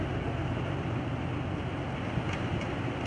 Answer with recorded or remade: recorded